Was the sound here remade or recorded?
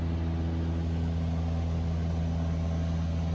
recorded